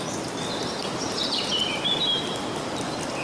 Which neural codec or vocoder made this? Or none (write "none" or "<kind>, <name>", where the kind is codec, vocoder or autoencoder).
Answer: none